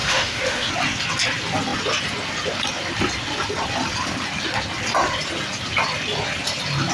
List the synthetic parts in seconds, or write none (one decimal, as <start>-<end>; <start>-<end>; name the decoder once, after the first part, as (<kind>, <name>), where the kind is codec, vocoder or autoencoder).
0.0-0.7 (autoencoder, DAC-VAE)